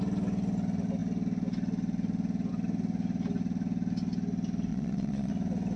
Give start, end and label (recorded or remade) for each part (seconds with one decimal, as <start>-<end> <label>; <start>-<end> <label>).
0.0-4.7 recorded; 4.7-5.3 remade; 5.3-5.8 recorded